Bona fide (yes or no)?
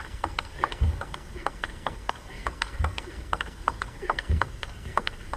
no